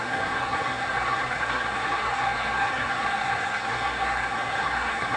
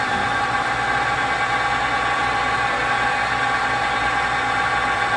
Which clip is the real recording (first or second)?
second